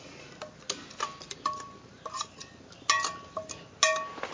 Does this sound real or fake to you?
real